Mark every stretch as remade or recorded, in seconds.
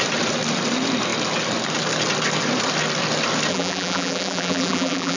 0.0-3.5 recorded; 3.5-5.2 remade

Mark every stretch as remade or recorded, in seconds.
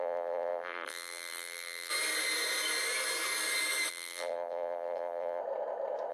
0.0-1.9 remade; 1.9-3.9 recorded; 3.9-5.4 remade; 5.4-6.1 recorded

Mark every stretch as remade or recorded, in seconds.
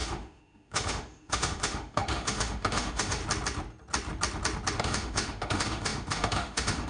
0.0-3.2 remade; 3.2-4.8 recorded; 4.8-6.9 remade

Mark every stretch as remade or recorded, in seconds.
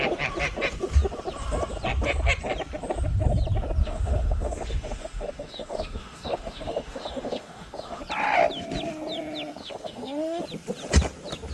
0.0-3.8 recorded; 3.8-8.0 remade; 8.0-9.6 recorded; 9.6-10.4 remade; 10.4-11.5 recorded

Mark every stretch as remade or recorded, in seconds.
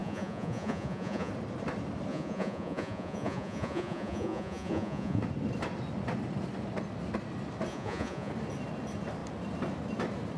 0.0-1.3 remade; 1.3-2.1 recorded; 2.1-5.2 remade; 5.2-7.7 recorded; 7.7-8.3 remade; 8.3-10.4 recorded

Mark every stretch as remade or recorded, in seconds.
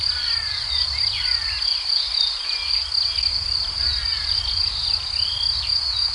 0.0-6.1 recorded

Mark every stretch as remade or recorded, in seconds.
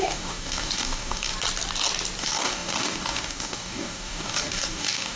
0.0-1.3 remade; 1.3-2.2 recorded; 2.2-5.2 remade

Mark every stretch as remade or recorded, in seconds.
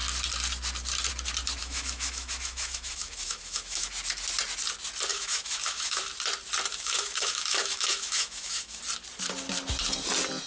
0.0-1.6 recorded; 1.6-3.9 remade; 3.9-5.1 recorded; 5.1-6.0 remade; 6.0-6.7 recorded; 6.7-8.8 remade; 8.8-10.5 recorded